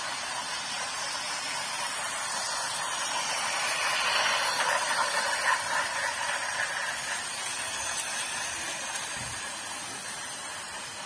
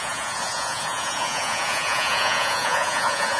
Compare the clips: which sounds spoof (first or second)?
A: second